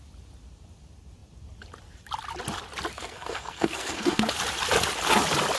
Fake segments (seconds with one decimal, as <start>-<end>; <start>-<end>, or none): 2.9-4.3